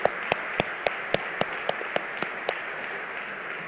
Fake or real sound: real